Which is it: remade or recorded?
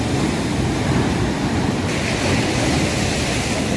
recorded